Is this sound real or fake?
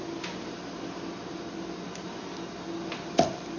real